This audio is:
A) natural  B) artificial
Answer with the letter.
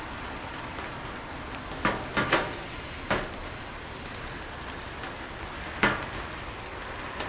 A